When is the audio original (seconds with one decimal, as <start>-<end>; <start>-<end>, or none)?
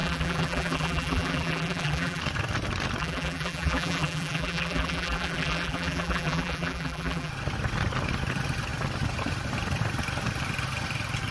2.2-3.0; 7.3-11.3